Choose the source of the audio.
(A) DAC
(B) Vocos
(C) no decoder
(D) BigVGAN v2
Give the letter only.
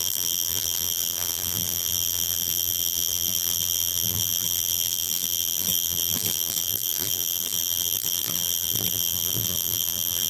D